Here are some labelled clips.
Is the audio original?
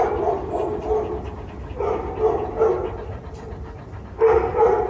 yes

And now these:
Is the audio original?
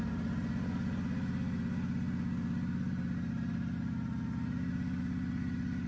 yes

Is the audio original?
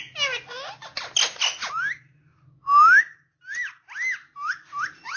yes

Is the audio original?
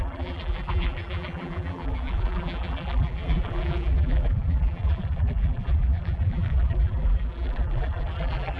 no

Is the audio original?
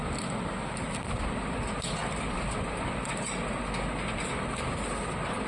yes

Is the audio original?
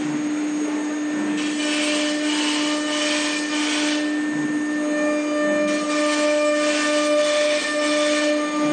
yes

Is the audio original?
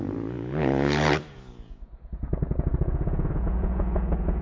no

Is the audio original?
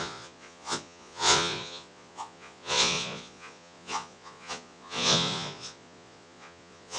no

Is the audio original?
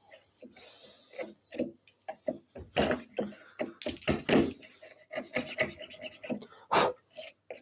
yes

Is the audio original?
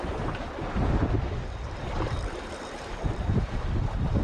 yes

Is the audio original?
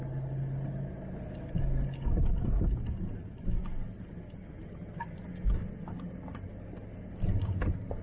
yes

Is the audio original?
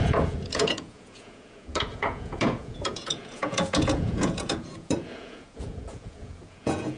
no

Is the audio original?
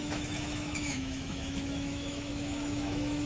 no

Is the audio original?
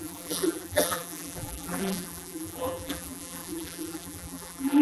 no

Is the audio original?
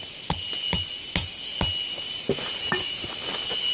yes